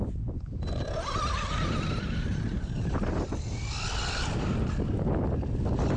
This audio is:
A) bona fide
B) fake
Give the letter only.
A